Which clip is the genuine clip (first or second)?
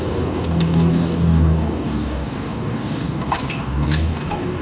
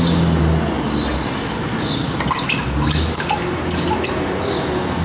second